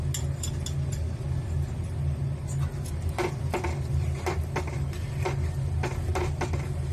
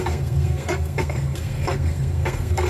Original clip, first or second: first